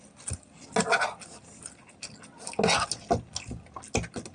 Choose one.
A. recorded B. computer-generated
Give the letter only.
A